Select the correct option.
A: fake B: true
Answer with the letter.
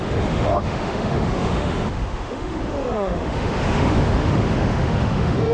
A